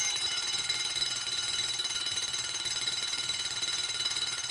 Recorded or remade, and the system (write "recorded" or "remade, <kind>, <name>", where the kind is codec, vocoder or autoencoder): remade, vocoder, Vocos